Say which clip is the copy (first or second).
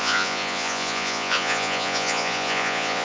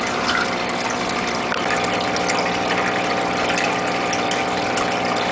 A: first